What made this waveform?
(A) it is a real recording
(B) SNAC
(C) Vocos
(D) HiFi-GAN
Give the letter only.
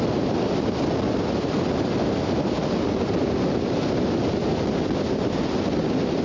A